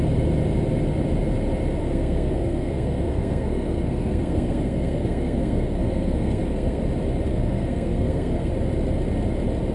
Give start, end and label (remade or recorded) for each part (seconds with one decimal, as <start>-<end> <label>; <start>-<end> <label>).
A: 0.0-1.8 recorded; 1.8-6.8 remade; 6.8-7.3 recorded; 7.3-8.5 remade; 8.5-9.7 recorded